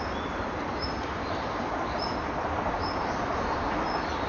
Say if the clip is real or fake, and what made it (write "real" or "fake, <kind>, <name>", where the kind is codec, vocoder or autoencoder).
real